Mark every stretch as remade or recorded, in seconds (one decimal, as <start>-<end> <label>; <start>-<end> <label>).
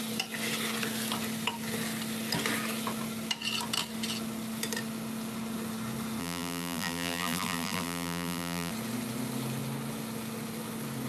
0.0-6.2 recorded; 6.2-8.7 remade; 8.7-11.1 recorded